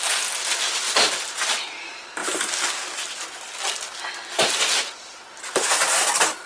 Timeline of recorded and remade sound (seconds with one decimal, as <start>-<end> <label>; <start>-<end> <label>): 0.0-6.5 recorded